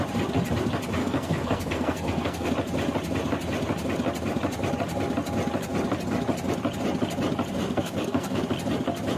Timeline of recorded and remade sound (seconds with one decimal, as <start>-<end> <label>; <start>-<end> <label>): 0.0-1.0 recorded; 1.0-2.5 remade; 2.5-7.6 recorded; 7.6-8.4 remade; 8.4-9.2 recorded